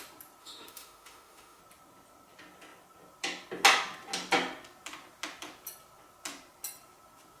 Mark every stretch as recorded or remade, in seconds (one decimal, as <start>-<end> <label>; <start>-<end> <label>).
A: 0.0-0.4 recorded; 0.4-1.6 remade; 1.6-7.4 recorded